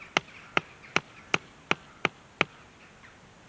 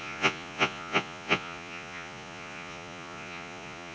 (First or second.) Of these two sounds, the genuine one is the first